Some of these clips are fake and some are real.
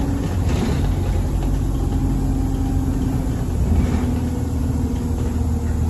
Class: real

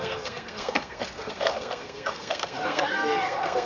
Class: fake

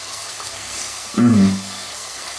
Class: fake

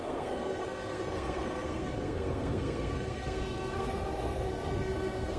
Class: fake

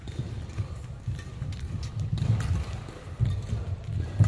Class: real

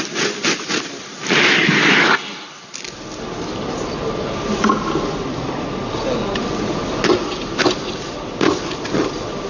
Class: real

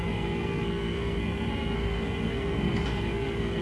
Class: fake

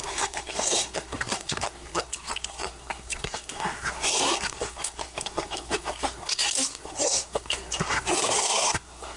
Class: fake